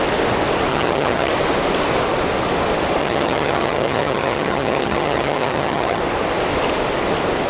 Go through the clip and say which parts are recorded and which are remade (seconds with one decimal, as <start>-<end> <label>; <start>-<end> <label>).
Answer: 0.0-0.7 recorded; 0.7-1.3 remade; 1.3-3.0 recorded; 3.0-6.0 remade; 6.0-7.5 recorded